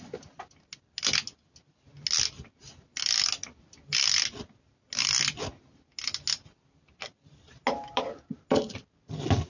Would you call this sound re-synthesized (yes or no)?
no